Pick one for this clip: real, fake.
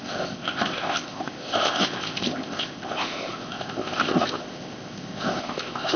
fake